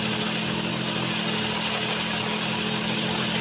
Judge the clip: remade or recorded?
recorded